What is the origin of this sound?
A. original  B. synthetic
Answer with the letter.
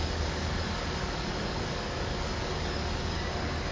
B